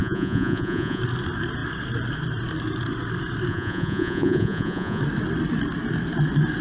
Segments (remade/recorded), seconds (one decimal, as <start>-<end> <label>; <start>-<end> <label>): 0.0-1.0 remade; 1.0-3.5 recorded; 3.5-5.0 remade; 5.0-6.6 recorded

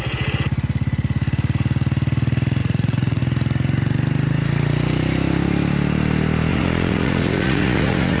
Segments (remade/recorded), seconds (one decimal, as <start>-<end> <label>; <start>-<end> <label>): 0.0-2.6 recorded; 2.6-3.2 remade; 3.2-6.5 recorded; 6.5-8.2 remade

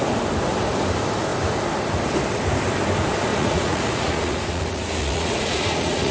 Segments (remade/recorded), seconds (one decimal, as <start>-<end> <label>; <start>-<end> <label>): 0.0-3.3 recorded; 3.3-6.1 remade

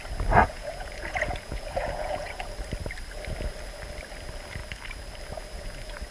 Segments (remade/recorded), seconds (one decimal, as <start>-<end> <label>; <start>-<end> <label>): 0.0-0.4 recorded; 0.4-2.4 remade; 2.4-6.1 recorded

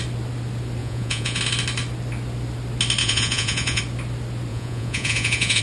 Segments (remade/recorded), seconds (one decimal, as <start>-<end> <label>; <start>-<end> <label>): 0.0-0.8 recorded; 0.8-1.4 remade; 1.4-3.0 recorded; 3.0-3.8 remade; 3.8-4.5 recorded; 4.5-5.6 remade

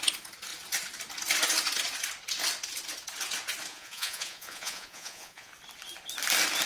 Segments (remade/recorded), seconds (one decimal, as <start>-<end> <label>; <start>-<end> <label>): 0.0-3.7 recorded; 3.7-5.5 remade; 5.5-6.7 recorded